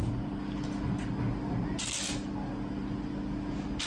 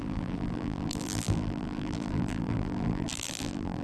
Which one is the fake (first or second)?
second